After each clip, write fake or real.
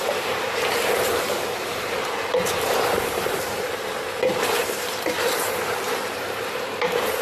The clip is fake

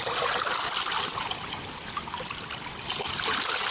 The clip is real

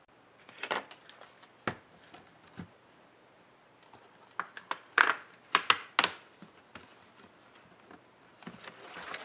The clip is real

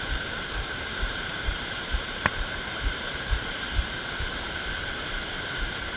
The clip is fake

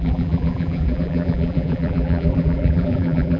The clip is fake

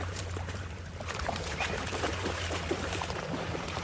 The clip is fake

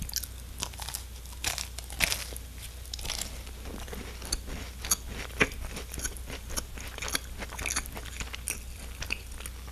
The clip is real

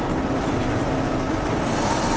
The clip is real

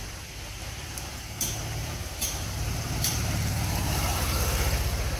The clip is fake